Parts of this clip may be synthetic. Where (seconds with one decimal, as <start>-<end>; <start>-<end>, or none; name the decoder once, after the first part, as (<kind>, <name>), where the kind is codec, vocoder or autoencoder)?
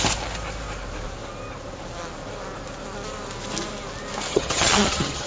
4.3-5.3 (vocoder, HiFi-GAN)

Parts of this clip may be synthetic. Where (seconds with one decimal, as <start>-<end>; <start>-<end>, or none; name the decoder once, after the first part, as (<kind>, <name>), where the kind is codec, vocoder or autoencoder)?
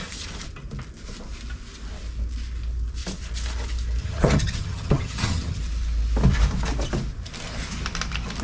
4.0-5.6 (vocoder, HiFi-GAN)